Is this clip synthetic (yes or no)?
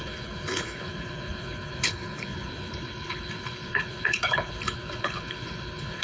yes